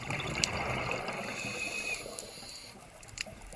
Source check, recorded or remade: recorded